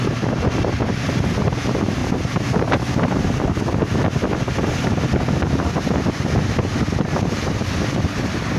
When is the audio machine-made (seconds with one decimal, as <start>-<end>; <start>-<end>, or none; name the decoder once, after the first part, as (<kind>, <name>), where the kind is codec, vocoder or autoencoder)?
2.0-3.7 (vocoder, BigVGAN v2)